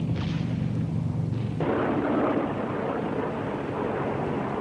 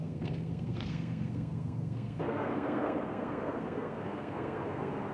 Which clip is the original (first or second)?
first